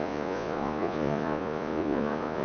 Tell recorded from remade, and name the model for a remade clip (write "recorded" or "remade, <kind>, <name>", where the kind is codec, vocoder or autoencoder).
remade, vocoder, Vocos